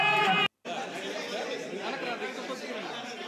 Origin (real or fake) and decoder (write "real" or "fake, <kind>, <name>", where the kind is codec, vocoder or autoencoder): real